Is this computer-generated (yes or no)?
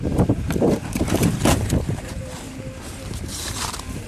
yes